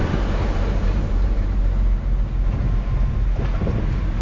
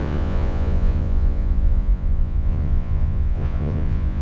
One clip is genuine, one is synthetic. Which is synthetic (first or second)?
second